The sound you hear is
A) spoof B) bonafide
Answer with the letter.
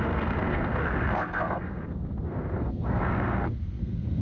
A